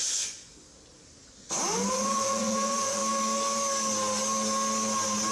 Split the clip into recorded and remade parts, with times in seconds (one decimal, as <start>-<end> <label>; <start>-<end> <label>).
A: 0.0-0.7 remade; 0.7-1.9 recorded; 1.9-3.0 remade; 3.0-5.3 recorded